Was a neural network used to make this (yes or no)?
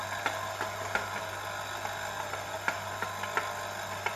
no